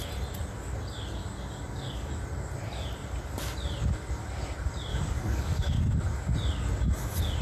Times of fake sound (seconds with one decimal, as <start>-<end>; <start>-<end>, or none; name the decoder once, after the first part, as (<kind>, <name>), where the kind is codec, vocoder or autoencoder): 1.2-2.1 (codec, DAC); 4.9-5.8